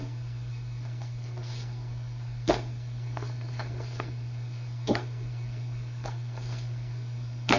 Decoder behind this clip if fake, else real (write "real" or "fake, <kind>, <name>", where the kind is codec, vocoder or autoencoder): fake, codec, SNAC